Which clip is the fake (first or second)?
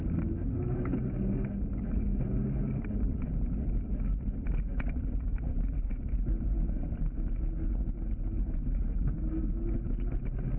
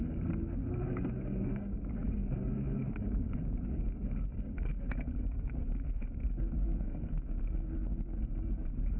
second